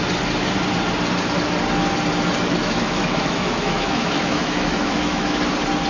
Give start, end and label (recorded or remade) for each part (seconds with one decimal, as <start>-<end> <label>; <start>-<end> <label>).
0.0-2.6 recorded; 2.6-5.4 remade; 5.4-5.9 recorded